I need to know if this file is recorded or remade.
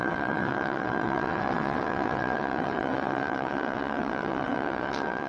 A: remade